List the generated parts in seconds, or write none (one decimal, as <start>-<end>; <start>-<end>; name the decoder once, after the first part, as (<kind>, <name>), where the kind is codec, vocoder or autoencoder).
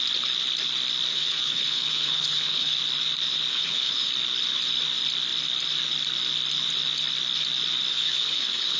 1.1-2.8 (codec, HILCodec); 3.5-4.1; 7.9-8.8